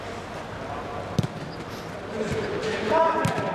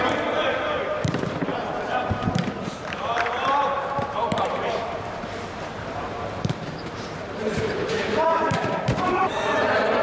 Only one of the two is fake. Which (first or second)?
second